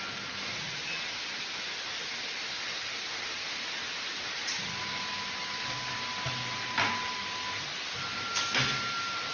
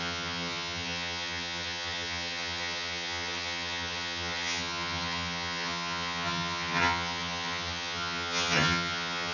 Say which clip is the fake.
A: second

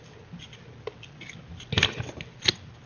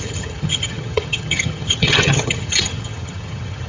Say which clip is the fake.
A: second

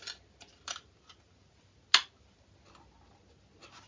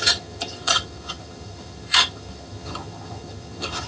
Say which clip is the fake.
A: second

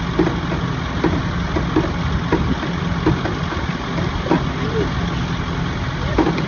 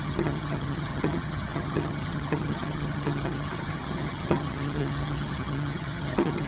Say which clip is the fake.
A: second